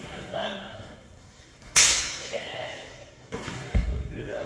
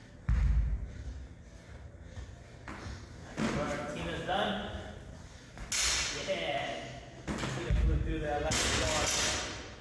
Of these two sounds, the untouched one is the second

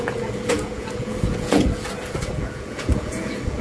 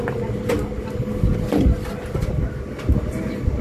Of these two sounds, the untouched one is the second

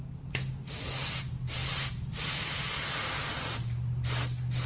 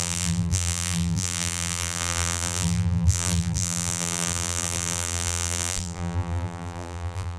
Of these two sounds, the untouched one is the first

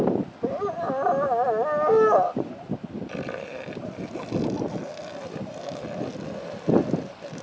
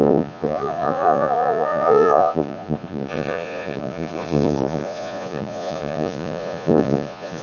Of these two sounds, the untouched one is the first